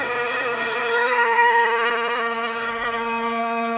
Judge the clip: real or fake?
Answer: fake